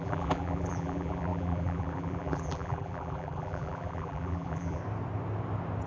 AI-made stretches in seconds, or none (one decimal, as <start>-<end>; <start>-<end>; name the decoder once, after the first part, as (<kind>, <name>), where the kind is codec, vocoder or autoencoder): 0.0-4.8 (vocoder, BigVGAN v2)